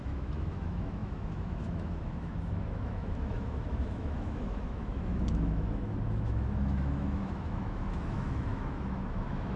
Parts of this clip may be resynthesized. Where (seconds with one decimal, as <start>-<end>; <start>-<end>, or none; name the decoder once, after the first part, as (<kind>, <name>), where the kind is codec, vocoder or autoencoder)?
0.0-9.6 (autoencoder, DAC-VAE)